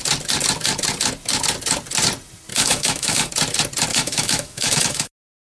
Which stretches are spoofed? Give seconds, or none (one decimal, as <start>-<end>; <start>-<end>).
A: 2.5-3.3; 3.9-5.1